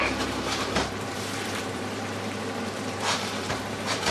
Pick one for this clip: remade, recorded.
remade